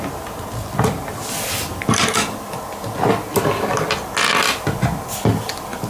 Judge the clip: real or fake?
real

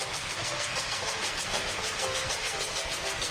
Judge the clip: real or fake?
fake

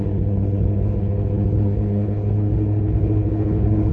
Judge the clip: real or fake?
fake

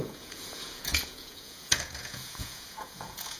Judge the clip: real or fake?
fake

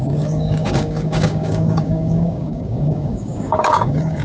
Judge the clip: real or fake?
fake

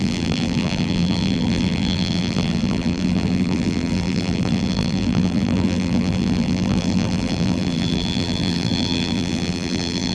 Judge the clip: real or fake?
fake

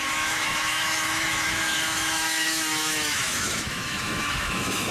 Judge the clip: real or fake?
fake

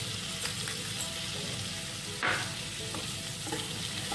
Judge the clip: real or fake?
real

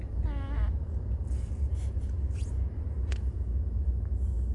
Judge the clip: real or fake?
real